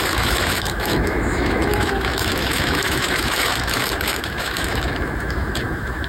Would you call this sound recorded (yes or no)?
no